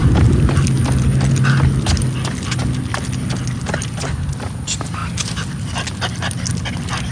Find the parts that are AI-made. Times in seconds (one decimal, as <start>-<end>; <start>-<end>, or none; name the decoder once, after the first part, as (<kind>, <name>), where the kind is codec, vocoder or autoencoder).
none